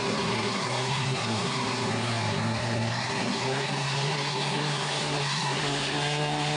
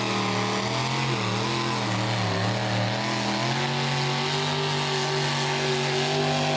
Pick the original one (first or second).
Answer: second